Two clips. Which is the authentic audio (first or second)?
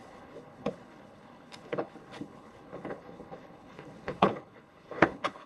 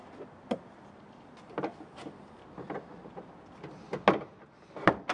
second